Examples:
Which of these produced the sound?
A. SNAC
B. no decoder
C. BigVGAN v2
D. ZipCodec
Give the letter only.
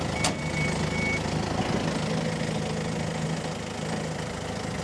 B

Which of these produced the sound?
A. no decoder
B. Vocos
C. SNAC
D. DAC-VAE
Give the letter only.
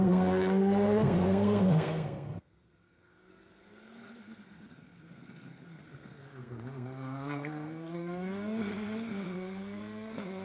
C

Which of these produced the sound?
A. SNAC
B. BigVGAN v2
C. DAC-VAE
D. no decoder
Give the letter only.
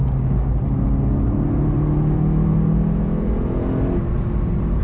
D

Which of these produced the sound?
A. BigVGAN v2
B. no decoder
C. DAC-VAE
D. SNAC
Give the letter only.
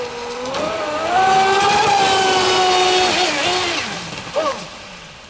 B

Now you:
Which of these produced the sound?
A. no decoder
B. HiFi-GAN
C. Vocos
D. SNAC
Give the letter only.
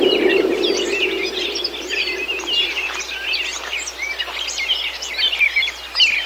A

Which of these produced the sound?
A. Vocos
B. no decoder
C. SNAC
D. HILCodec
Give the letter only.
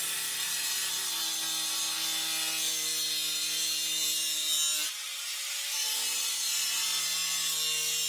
B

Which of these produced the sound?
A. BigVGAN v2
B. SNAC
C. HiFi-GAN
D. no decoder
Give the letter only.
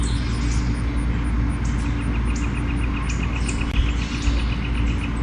D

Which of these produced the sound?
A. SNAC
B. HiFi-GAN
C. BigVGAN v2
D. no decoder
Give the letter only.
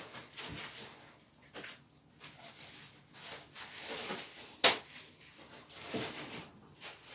D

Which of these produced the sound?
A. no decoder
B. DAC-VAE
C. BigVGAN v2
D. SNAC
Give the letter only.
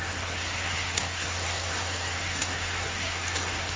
D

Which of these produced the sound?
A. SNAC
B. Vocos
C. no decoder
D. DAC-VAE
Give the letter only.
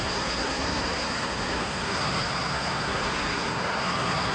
A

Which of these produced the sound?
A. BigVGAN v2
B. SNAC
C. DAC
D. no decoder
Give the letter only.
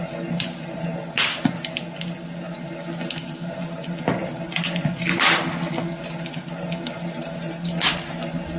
D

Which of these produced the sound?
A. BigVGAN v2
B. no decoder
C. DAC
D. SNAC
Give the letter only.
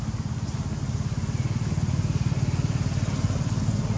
B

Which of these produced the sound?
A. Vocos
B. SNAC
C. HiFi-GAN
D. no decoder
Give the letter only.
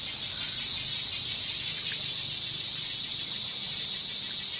D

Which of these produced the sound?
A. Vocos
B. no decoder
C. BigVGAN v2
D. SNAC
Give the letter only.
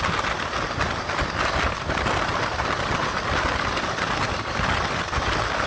B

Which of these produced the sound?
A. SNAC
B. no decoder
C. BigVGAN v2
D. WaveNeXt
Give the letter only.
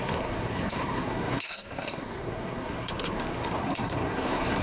A